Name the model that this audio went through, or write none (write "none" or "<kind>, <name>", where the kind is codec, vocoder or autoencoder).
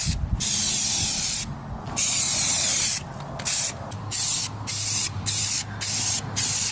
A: none